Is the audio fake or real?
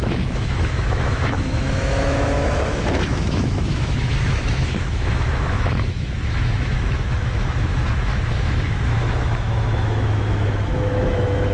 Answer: fake